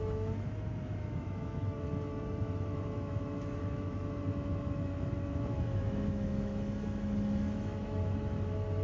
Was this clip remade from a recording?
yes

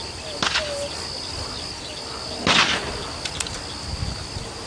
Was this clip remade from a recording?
no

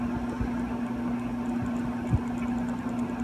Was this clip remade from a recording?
no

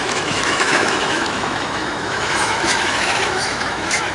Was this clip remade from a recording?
yes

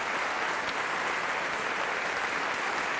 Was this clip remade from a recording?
no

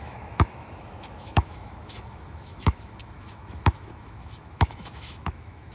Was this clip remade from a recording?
yes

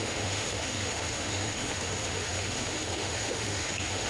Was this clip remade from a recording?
yes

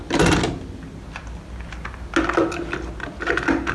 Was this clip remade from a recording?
no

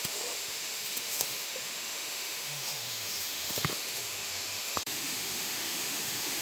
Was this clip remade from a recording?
yes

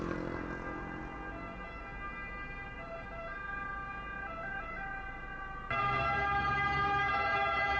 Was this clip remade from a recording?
no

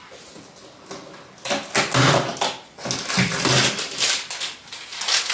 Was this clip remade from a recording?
no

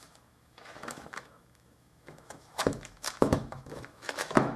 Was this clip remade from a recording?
yes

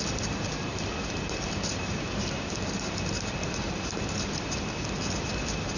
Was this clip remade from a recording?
no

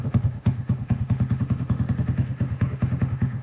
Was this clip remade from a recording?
yes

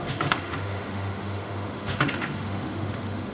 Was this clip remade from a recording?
yes